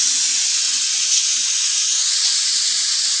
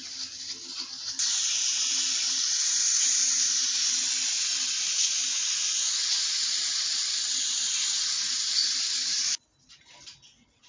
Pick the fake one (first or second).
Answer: first